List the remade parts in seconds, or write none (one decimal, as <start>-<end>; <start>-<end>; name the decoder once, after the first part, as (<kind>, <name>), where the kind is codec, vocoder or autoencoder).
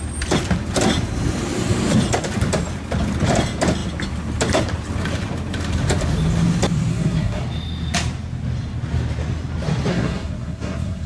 6.9-7.4 (codec, SNAC); 9.9-11.1